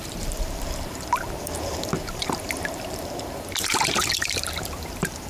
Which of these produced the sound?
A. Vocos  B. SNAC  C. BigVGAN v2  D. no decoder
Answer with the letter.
C